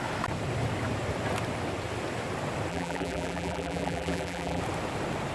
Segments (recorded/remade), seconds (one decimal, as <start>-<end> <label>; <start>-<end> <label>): 0.0-2.7 recorded; 2.7-4.6 remade; 4.6-5.3 recorded